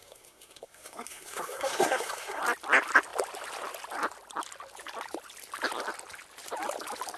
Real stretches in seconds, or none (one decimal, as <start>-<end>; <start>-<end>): 2.4-7.2